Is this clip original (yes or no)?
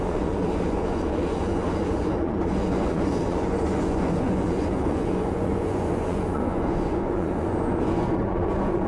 no